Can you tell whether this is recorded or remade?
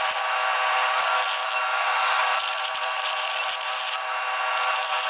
recorded